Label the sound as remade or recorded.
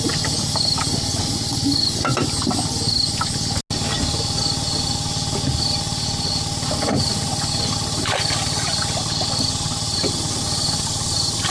recorded